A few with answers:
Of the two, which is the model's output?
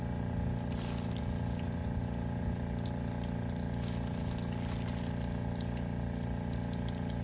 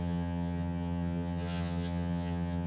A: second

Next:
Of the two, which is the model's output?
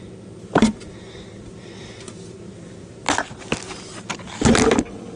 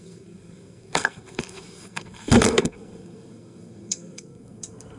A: second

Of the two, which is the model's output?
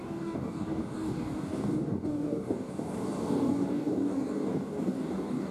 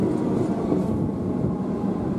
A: first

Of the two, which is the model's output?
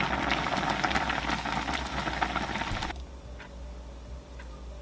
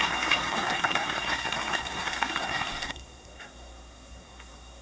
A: second